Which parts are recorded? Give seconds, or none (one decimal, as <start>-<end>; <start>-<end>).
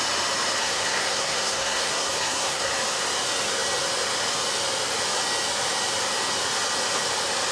0.0-0.6; 2.7-7.5